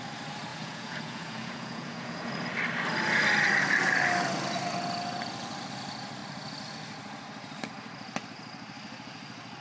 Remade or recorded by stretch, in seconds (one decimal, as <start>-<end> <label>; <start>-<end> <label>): 0.0-0.5 recorded; 0.5-2.3 remade; 2.3-9.6 recorded